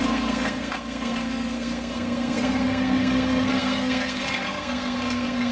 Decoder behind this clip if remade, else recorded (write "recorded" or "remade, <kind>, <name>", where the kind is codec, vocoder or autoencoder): remade, codec, SNAC